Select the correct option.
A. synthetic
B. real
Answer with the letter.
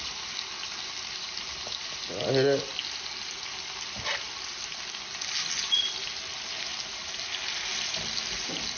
B